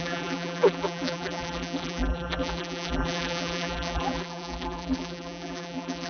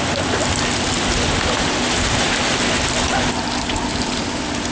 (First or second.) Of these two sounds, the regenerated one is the first